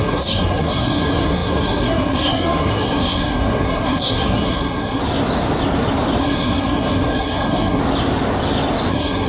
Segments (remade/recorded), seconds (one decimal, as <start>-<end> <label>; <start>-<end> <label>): 0.0-5.0 remade; 5.0-6.2 recorded; 6.2-7.8 remade; 7.8-8.9 recorded; 8.9-9.3 remade